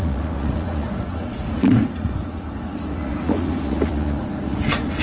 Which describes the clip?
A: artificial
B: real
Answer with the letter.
A